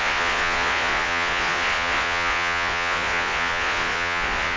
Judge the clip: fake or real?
fake